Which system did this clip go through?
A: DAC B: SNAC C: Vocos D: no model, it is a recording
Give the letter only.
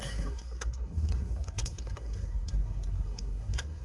B